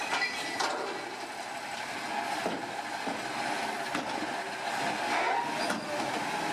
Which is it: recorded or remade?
recorded